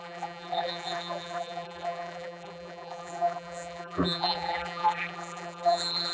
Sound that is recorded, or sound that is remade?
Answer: remade